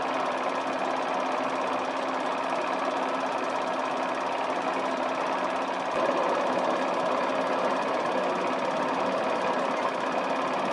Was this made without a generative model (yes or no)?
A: yes